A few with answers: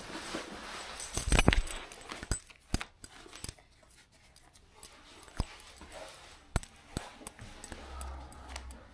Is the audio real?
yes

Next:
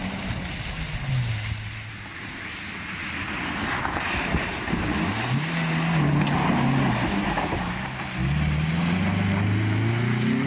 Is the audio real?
yes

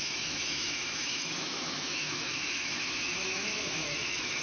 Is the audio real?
no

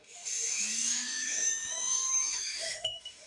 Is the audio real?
no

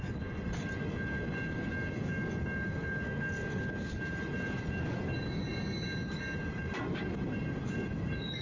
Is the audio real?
yes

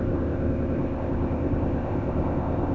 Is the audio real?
no